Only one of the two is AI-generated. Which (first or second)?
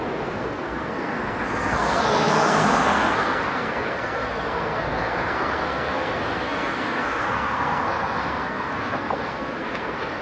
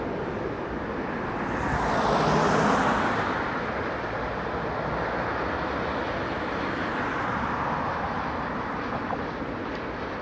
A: first